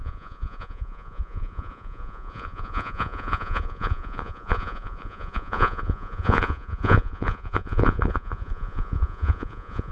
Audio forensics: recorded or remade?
remade